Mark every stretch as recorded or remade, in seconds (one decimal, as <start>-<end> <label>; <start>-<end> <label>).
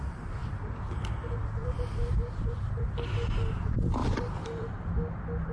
0.0-0.4 recorded; 0.4-0.9 remade; 0.9-1.6 recorded; 1.6-2.9 remade; 2.9-4.0 recorded; 4.0-4.8 remade; 4.8-5.5 recorded